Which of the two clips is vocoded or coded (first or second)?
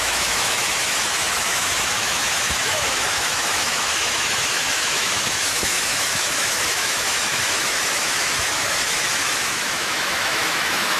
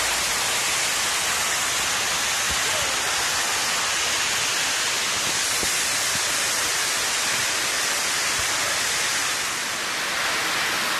first